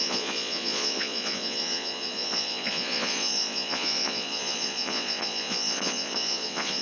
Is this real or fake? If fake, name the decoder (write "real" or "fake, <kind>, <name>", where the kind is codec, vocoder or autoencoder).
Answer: fake, vocoder, Vocos